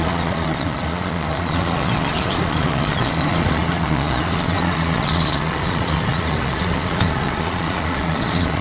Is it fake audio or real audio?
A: fake